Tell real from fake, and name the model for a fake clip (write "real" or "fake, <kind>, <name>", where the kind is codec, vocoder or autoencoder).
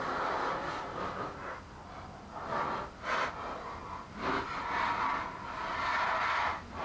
real